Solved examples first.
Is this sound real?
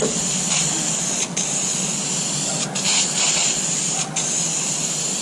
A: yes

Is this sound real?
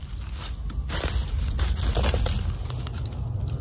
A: yes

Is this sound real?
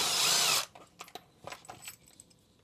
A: yes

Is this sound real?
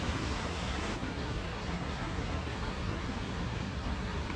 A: no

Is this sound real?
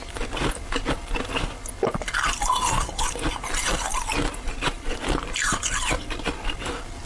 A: yes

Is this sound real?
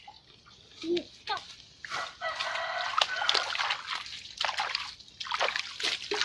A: yes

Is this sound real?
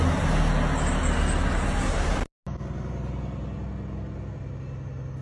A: yes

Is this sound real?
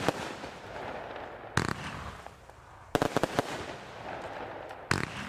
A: yes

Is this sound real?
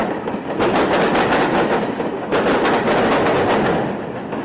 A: yes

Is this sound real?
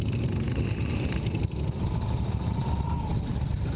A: yes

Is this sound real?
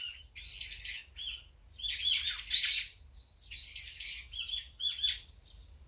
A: yes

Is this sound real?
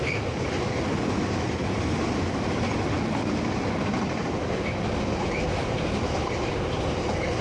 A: yes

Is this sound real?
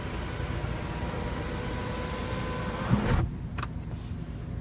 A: yes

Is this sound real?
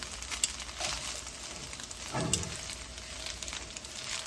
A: yes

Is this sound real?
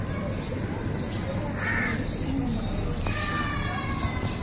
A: yes